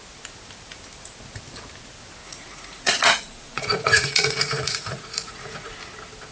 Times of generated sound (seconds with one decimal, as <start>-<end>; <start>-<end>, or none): 2.2-5.7